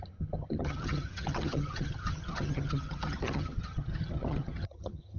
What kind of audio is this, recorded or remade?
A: remade